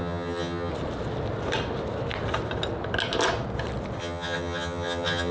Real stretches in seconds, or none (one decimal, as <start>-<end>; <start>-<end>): 0.7-4.0